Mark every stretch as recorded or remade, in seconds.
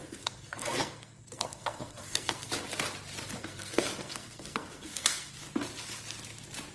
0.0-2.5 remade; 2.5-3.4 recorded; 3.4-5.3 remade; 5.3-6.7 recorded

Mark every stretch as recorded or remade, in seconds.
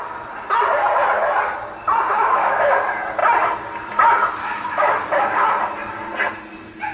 0.0-2.1 recorded; 2.1-2.6 remade; 2.6-4.4 recorded; 4.4-5.5 remade; 5.5-6.9 recorded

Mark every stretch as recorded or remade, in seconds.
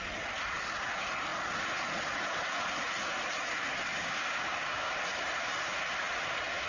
0.0-4.0 recorded; 4.0-4.9 remade; 4.9-6.7 recorded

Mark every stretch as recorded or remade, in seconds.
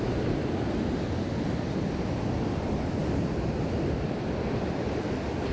0.0-3.0 recorded; 3.0-4.5 remade; 4.5-5.5 recorded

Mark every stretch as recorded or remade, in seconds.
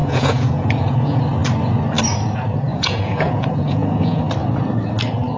0.0-1.2 remade; 1.2-2.7 recorded; 2.7-4.2 remade; 4.2-5.4 recorded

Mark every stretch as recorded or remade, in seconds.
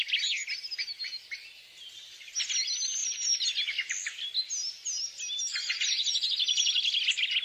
0.0-7.4 recorded